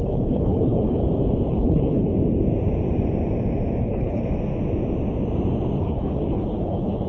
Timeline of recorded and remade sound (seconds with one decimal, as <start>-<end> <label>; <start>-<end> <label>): 0.0-1.0 remade; 1.0-1.5 recorded; 1.5-2.1 remade; 2.1-3.8 recorded; 3.8-4.2 remade; 4.2-5.8 recorded; 5.8-7.1 remade